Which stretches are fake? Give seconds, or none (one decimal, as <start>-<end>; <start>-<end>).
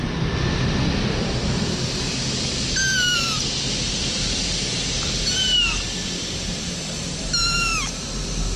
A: none